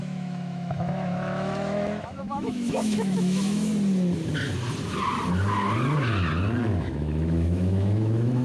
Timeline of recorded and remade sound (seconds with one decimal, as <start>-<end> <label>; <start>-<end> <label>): 0.0-3.7 remade; 3.7-6.6 recorded; 6.6-8.4 remade

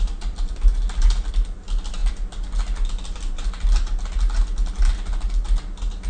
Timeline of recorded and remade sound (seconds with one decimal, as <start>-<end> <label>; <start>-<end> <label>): 0.0-6.1 recorded

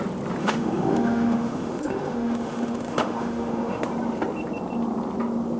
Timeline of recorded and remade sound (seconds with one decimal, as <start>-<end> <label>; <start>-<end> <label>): 0.0-0.4 recorded; 0.4-3.8 remade; 3.8-5.6 recorded

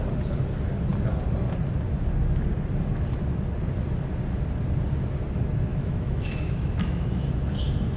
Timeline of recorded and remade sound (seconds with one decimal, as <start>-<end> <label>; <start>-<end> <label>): 0.0-5.7 recorded; 5.7-7.3 remade; 7.3-8.0 recorded